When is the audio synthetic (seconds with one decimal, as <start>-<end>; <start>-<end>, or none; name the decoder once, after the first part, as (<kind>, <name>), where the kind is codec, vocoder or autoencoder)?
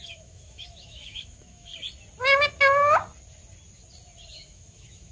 0.0-1.7 (autoencoder, DAC-VAE); 4.3-5.1